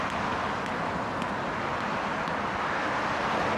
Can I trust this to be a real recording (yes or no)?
yes